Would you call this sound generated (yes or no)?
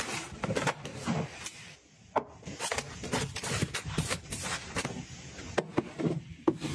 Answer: yes